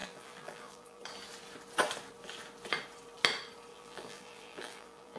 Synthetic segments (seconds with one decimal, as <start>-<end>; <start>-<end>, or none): 0.0-1.0; 3.7-5.2